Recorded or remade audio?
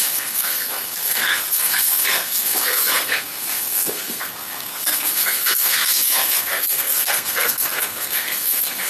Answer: remade